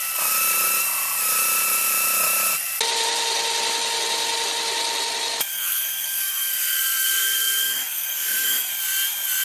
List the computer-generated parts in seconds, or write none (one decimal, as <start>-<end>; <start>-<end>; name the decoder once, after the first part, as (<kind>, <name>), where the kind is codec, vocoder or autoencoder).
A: 5.5-8.7 (codec, SNAC)